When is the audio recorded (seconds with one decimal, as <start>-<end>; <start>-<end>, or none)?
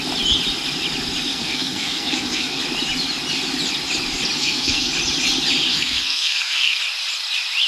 0.0-1.3; 2.6-4.4; 4.9-5.7; 6.8-7.7